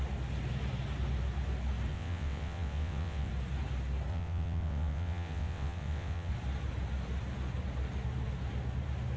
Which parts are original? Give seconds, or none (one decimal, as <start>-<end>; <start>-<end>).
0.0-1.9; 3.3-4.1; 6.3-9.2